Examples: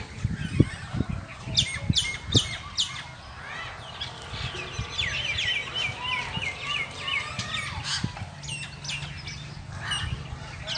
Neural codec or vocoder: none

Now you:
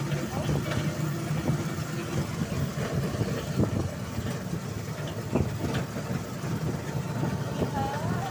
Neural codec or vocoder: none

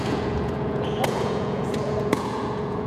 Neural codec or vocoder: vocoder, Vocos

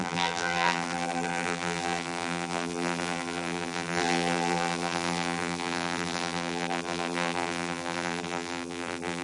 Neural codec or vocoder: vocoder, BigVGAN v2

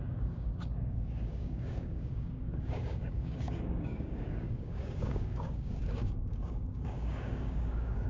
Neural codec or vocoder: codec, DAC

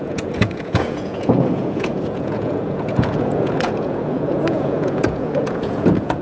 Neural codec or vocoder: vocoder, Vocos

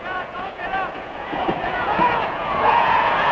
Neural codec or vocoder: vocoder, Vocos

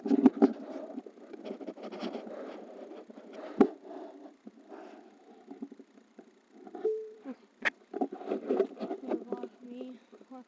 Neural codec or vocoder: vocoder, BigVGAN v2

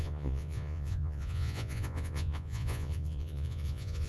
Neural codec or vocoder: vocoder, Vocos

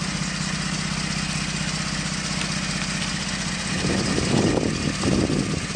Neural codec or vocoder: none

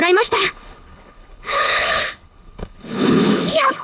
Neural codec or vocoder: codec, HILCodec